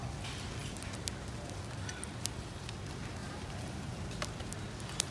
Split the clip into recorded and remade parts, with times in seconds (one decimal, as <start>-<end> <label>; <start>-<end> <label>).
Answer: 0.0-3.2 recorded; 3.2-4.6 remade; 4.6-5.1 recorded